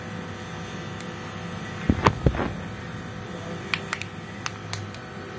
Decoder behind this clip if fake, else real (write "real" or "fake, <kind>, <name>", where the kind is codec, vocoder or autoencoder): real